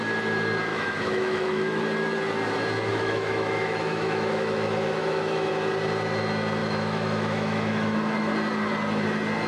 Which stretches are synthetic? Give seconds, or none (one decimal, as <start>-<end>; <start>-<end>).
0.7-1.8; 2.9-5.5; 6.6-8.3